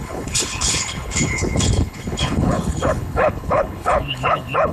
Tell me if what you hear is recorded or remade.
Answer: remade